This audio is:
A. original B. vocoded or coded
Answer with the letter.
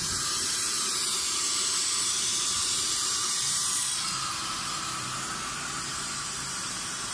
B